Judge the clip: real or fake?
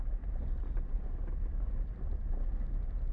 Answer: real